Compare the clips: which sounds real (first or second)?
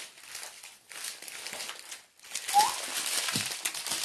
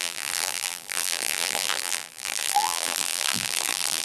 first